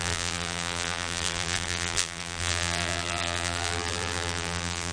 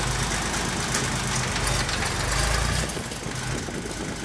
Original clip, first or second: second